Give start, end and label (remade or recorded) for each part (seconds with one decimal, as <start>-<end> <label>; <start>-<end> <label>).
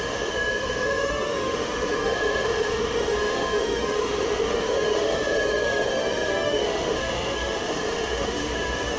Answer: 0.0-9.0 remade